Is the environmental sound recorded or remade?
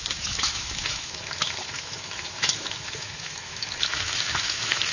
remade